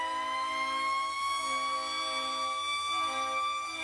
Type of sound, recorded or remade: recorded